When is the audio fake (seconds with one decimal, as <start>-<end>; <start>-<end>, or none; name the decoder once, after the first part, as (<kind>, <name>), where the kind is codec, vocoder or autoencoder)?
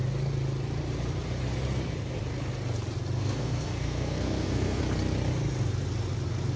3.2-4.8 (codec, SNAC)